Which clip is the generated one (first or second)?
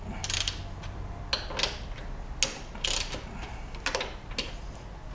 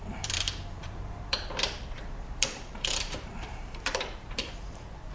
second